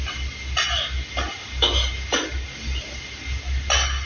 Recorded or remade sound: recorded